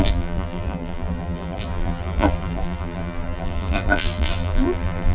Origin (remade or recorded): remade